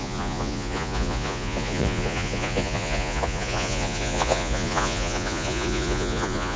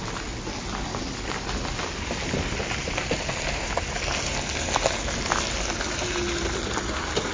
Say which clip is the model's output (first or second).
first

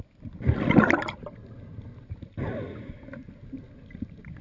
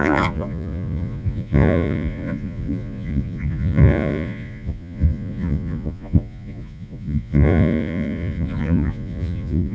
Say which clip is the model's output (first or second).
second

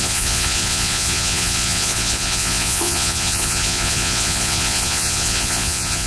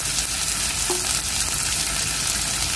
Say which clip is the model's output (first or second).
first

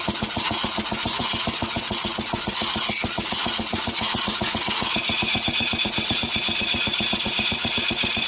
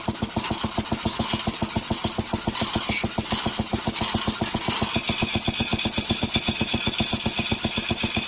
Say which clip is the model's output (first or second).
first